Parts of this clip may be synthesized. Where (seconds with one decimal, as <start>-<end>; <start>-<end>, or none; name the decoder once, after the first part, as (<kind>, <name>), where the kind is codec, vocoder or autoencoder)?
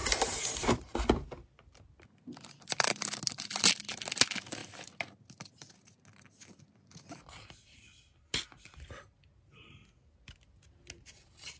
0.0-0.9 (vocoder, BigVGAN v2)